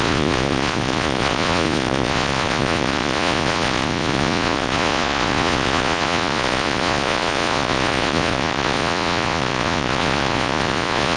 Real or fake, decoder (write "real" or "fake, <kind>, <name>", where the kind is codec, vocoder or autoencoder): fake, vocoder, Vocos